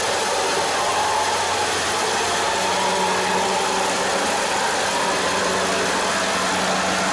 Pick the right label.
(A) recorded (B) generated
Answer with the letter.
A